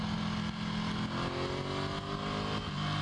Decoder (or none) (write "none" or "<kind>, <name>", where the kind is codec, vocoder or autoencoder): none